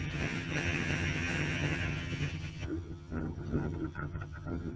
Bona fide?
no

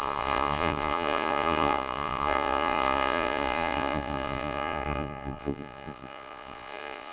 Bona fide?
no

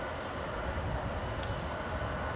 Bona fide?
yes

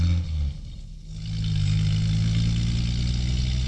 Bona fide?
yes